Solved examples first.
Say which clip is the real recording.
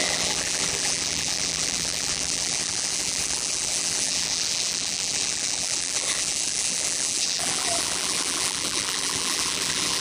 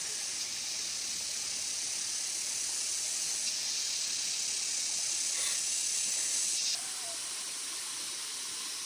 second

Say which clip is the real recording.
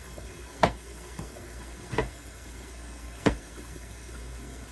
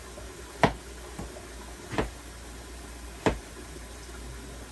second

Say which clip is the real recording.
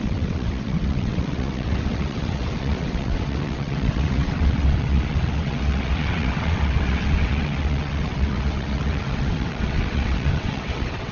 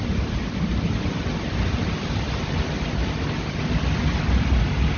second